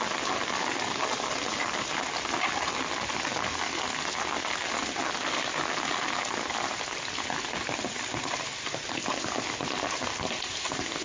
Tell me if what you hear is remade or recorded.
recorded